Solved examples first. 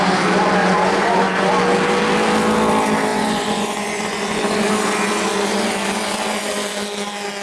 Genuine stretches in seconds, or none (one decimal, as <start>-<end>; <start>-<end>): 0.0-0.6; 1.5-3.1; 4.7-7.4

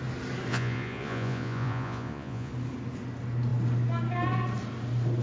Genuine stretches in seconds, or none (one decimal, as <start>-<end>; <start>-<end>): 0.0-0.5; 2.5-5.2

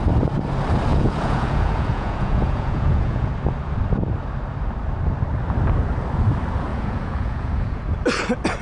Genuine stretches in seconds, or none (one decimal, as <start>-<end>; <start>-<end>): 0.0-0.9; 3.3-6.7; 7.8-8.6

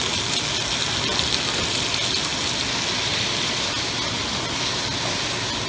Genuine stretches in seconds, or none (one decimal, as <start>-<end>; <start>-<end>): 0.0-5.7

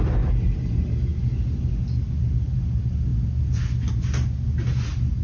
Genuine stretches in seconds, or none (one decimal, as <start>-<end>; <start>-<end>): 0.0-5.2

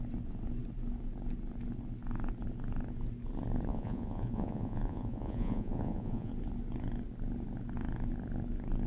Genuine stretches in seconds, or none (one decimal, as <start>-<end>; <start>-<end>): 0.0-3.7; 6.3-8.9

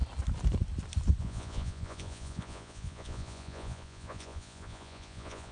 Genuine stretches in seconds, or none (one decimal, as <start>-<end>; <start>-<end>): 0.0-1.2